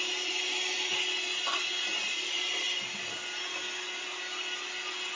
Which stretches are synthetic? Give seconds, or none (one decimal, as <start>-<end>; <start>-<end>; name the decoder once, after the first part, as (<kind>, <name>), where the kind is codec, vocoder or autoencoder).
none